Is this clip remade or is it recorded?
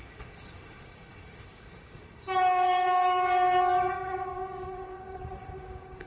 remade